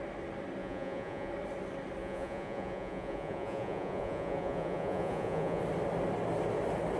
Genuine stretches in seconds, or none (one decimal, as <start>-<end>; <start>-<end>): 0.0-0.6; 1.3-2.0; 5.6-7.0